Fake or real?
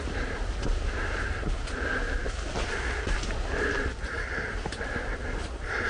real